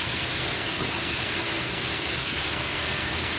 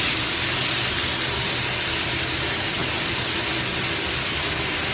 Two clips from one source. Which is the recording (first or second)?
second